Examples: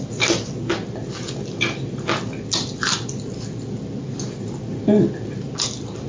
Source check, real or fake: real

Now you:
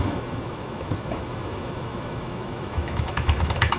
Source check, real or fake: fake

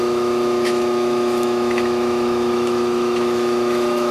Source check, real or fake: fake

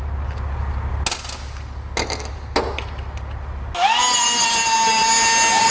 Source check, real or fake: real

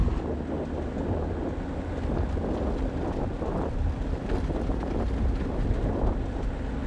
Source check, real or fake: real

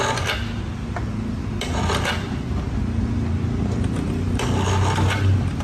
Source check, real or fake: real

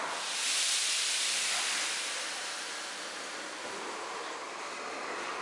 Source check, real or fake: real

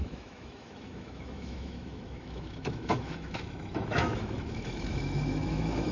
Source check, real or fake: fake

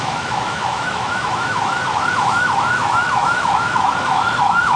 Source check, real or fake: fake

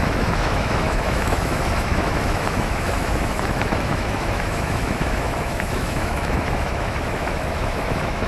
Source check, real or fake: fake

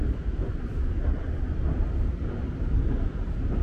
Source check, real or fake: real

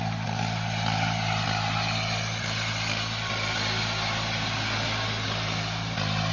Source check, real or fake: real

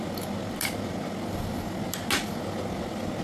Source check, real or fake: real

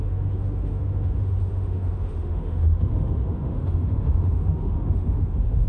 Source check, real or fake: fake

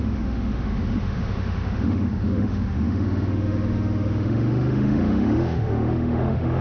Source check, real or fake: fake